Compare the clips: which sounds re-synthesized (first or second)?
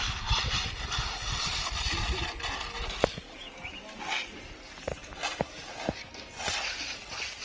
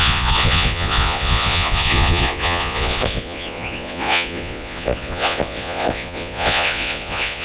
second